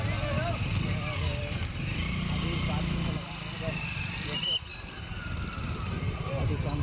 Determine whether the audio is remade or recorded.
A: recorded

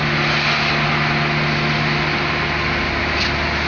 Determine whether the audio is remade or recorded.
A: recorded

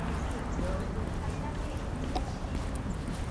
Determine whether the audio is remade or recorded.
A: recorded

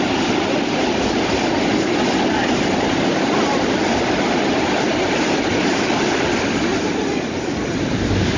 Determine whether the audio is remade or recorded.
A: remade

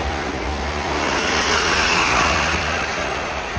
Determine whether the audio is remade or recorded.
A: remade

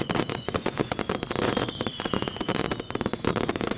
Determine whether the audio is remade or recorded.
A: remade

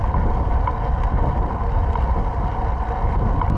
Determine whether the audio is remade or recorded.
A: recorded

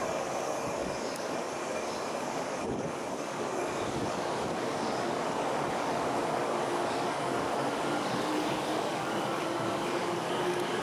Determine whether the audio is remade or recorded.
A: remade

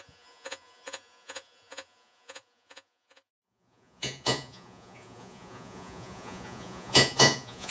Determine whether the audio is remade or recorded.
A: remade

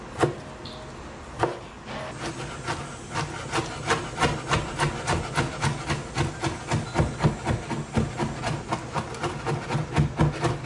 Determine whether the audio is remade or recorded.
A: recorded